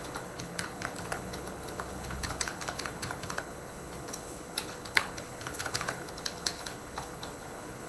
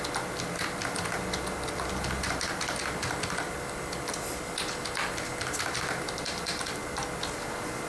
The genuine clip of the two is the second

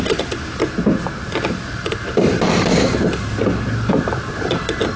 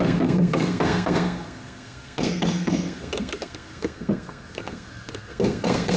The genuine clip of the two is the first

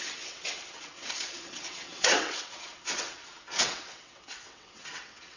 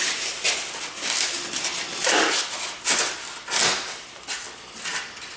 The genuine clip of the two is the second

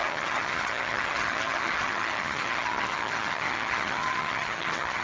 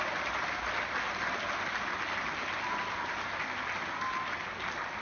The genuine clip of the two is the second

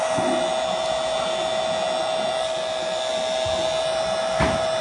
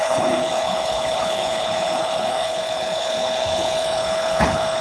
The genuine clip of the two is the first